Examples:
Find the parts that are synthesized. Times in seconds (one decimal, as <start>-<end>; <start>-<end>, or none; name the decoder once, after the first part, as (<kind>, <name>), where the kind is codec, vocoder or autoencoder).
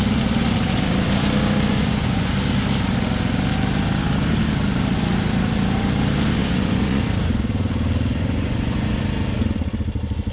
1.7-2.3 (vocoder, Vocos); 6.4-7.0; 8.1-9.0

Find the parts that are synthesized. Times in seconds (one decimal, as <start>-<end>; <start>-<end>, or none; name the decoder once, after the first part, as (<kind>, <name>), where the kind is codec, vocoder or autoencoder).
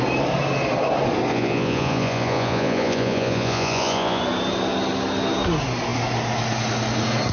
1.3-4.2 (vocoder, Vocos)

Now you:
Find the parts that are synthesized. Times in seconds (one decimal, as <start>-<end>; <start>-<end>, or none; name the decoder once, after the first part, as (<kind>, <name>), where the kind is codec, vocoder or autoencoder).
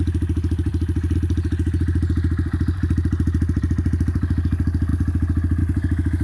none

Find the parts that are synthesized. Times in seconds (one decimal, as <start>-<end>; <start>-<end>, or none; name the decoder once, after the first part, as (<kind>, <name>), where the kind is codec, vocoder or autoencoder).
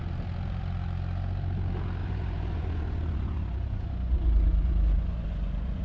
2.0-5.8 (vocoder, Vocos)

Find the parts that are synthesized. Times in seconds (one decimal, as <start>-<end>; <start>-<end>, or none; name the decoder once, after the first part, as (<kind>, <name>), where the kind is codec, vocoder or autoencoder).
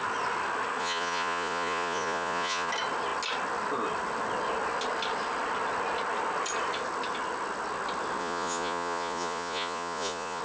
0.8-2.7 (vocoder, Vocos); 8.2-10.4